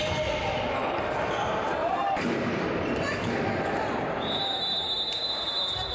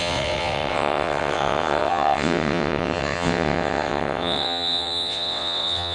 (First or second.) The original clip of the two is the first